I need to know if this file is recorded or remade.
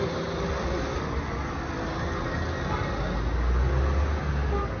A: recorded